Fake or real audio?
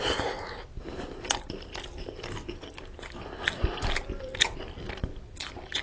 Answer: real